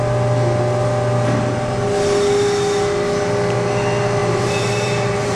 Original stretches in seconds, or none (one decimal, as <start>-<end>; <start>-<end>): 0.0-4.2